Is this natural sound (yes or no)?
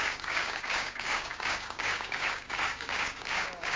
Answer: no